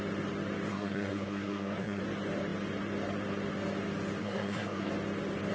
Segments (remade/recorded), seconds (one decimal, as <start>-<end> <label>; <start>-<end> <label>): 0.0-0.7 recorded; 0.7-2.0 remade; 2.0-4.2 recorded; 4.2-4.9 remade; 4.9-5.5 recorded